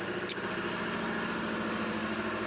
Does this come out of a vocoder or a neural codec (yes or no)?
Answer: no